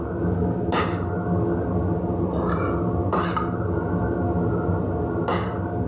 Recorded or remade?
recorded